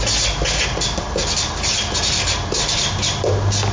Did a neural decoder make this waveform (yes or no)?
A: no